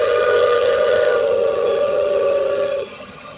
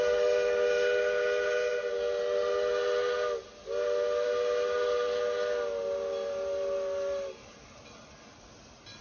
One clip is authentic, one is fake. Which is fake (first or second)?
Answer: first